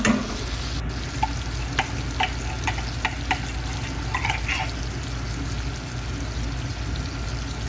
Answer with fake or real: real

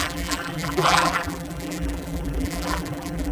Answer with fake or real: fake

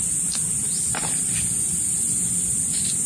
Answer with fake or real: real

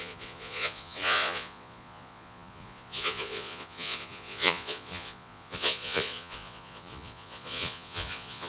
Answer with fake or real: fake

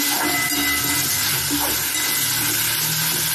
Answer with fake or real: real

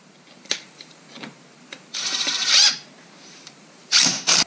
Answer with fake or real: fake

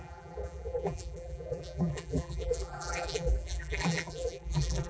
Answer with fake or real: fake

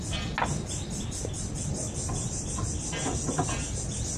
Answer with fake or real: real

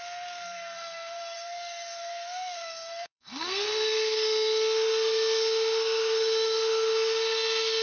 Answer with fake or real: fake